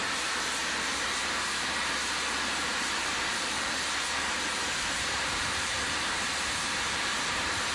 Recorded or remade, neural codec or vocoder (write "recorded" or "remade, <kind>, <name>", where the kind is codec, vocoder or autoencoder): remade, vocoder, BigVGAN v2